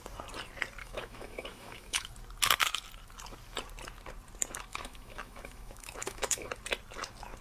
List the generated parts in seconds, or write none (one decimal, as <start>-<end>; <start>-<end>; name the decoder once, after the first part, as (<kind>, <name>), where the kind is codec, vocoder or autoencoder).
0.8-2.1 (autoencoder, DAC-VAE); 4.7-6.5